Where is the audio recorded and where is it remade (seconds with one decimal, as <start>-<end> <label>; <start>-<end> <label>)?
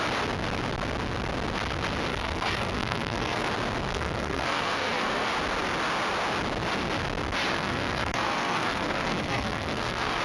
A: 0.0-2.1 recorded; 2.1-3.5 remade; 3.5-3.9 recorded; 3.9-5.3 remade; 5.3-7.5 recorded; 7.5-10.2 remade